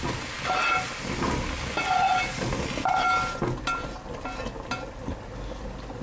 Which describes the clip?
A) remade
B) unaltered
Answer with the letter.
B